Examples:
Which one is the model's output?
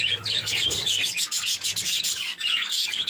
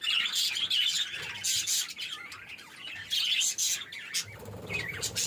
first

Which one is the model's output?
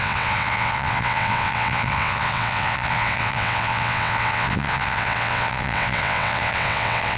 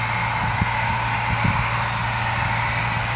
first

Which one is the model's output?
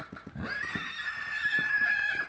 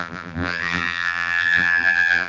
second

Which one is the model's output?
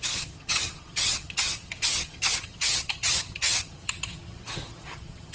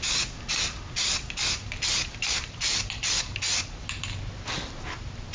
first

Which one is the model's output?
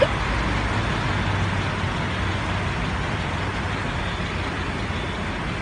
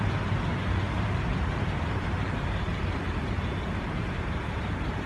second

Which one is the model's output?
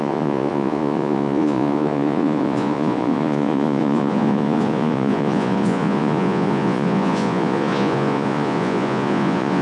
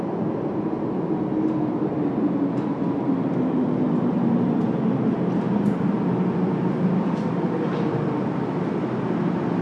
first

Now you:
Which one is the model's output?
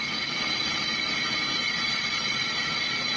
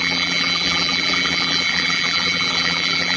second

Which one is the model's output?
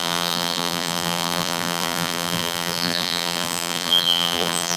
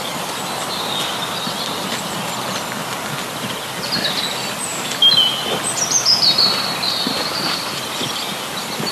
first